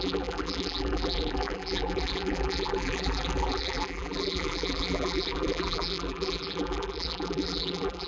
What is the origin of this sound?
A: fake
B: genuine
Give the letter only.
A